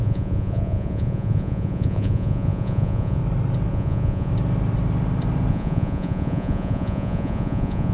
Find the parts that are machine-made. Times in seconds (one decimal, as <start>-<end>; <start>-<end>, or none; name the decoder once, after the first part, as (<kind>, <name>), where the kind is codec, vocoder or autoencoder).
0.0-3.2 (vocoder, Vocos); 3.7-4.3; 5.5-7.9